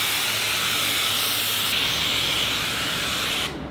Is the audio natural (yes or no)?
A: yes